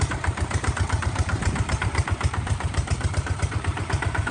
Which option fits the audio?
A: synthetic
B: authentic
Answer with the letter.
A